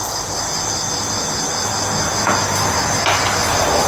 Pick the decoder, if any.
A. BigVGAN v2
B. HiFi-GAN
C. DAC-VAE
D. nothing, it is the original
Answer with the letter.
D